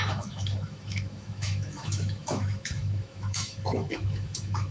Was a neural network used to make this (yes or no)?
yes